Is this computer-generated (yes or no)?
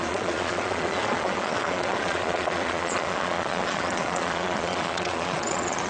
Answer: yes